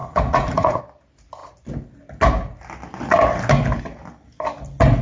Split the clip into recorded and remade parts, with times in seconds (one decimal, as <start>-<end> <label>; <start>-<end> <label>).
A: 0.0-0.8 remade; 0.8-5.0 recorded